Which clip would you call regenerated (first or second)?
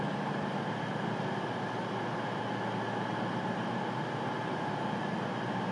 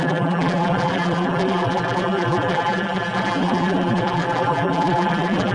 second